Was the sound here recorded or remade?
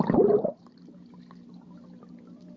recorded